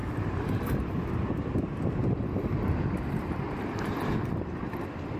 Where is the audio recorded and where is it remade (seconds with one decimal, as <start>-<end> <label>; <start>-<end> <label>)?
0.0-1.1 remade; 1.1-5.2 recorded